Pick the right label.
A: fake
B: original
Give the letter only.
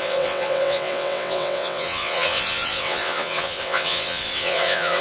A